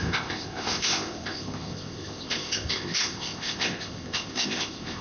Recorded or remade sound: remade